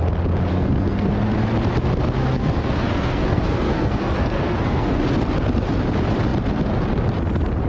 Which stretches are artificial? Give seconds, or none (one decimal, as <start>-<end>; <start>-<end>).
0.5-1.1; 2.2-5.0